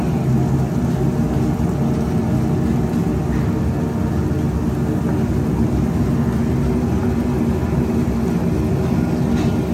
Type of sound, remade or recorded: recorded